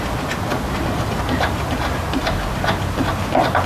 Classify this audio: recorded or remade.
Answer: recorded